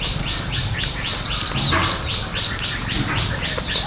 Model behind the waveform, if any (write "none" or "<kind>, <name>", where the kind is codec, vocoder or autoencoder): vocoder, BigVGAN v2